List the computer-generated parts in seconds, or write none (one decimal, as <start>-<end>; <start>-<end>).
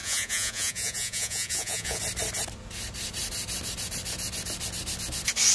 0.0-2.0